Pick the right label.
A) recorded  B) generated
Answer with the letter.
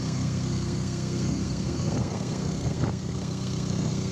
B